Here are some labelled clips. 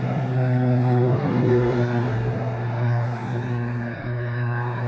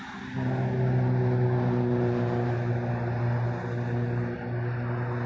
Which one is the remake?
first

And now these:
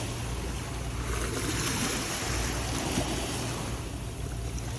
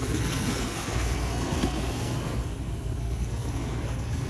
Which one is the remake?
second